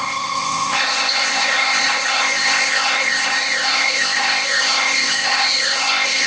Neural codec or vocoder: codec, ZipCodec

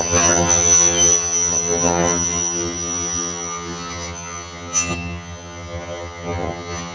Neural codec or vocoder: vocoder, HiFi-GAN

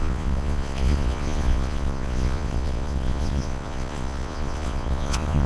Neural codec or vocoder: vocoder, Vocos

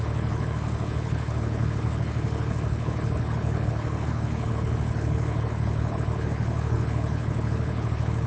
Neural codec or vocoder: codec, HILCodec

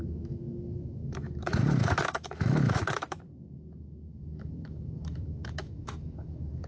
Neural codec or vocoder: autoencoder, DAC-VAE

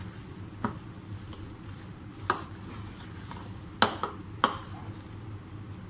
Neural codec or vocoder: none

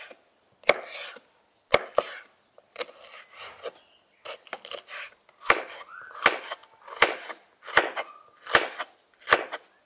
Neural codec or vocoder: none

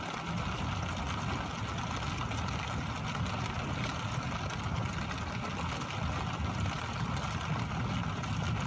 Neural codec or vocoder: none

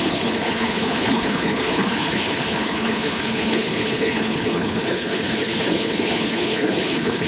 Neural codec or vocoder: codec, HILCodec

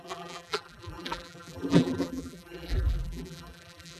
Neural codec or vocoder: vocoder, BigVGAN v2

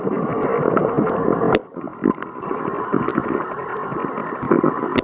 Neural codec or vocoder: none